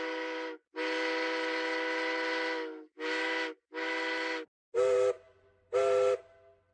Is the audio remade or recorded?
recorded